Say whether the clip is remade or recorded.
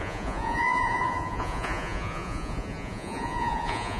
remade